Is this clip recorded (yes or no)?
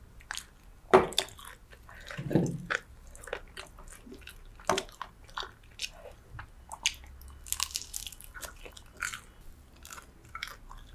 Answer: yes